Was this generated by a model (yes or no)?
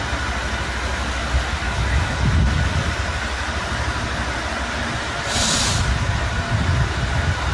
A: no